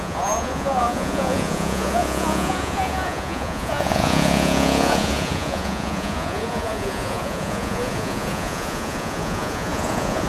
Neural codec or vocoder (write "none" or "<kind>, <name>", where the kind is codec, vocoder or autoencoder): vocoder, Vocos